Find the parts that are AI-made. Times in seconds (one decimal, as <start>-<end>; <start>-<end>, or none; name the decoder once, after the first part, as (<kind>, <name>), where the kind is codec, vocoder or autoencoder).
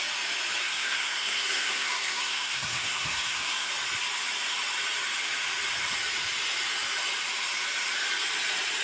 0.6-3.7 (codec, SNAC)